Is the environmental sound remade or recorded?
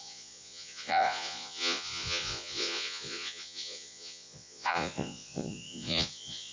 remade